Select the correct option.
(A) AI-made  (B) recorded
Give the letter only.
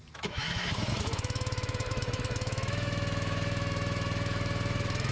A